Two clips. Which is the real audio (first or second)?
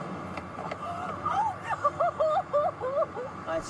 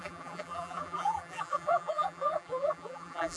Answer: first